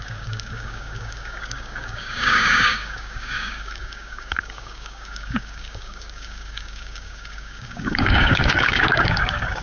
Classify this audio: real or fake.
fake